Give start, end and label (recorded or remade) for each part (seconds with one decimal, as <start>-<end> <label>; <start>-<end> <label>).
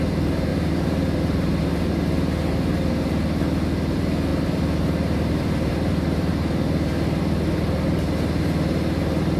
0.0-0.5 recorded; 0.5-1.6 remade; 1.6-4.3 recorded; 4.3-6.3 remade; 6.3-9.4 recorded